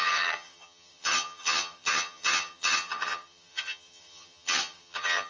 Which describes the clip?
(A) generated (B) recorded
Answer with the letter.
A